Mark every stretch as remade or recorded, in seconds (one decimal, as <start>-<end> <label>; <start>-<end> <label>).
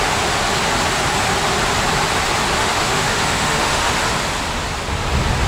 0.0-2.6 recorded; 2.6-3.9 remade; 3.9-5.5 recorded